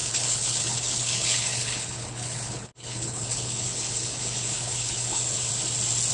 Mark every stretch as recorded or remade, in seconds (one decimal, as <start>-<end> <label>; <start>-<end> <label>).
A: 0.0-5.5 remade; 5.5-6.1 recorded